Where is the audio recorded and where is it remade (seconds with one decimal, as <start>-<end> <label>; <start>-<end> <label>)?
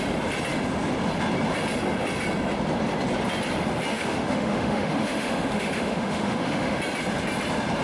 0.0-3.9 recorded; 3.9-6.8 remade; 6.8-7.8 recorded